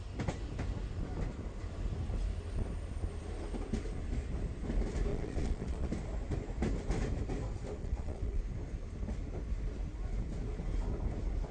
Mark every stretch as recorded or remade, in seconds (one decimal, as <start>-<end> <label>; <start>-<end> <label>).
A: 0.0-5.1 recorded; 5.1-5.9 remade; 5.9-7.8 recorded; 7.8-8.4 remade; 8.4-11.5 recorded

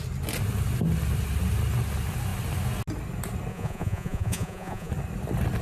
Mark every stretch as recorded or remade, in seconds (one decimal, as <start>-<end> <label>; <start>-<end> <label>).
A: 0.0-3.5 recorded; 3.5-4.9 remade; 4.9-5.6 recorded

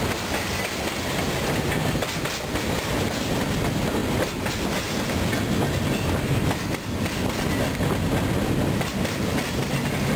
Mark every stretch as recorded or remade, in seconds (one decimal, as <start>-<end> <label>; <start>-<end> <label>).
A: 0.0-10.2 recorded

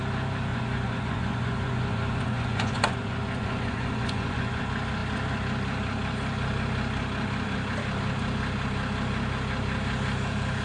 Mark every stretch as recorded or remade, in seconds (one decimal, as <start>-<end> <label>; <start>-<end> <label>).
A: 0.0-0.5 recorded; 0.5-4.6 remade; 4.6-10.6 recorded

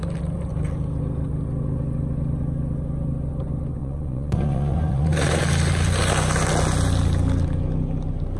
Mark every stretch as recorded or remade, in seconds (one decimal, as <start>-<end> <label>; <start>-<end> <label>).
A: 0.0-3.8 recorded; 3.8-5.4 remade; 5.4-8.4 recorded